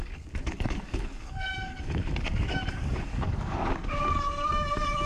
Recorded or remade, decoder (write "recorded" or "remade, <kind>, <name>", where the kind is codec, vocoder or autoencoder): remade, codec, DAC